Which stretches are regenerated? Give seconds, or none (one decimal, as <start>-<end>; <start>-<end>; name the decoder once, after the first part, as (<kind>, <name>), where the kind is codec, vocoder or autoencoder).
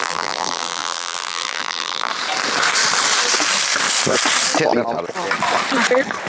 0.0-2.1 (vocoder, BigVGAN v2)